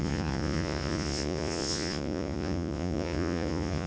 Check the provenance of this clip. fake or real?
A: fake